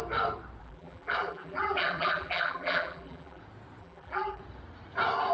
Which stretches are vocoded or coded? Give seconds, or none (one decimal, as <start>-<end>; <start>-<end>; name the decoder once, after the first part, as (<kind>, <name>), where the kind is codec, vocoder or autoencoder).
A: 0.6-3.4 (vocoder, BigVGAN v2); 3.8-4.4